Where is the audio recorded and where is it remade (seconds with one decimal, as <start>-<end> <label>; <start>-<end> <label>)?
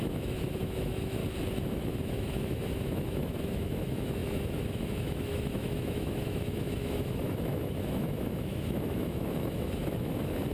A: 0.0-1.2 remade; 1.2-1.7 recorded; 1.7-10.5 remade